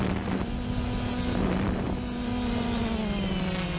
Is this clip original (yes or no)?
yes